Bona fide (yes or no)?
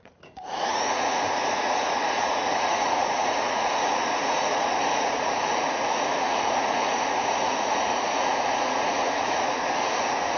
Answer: no